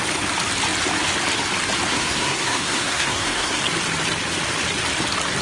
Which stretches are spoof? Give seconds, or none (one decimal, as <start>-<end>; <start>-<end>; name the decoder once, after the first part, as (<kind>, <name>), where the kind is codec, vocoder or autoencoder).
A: 1.9-3.6 (codec, SNAC)